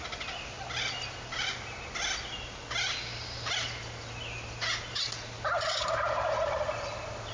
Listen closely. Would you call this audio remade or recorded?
recorded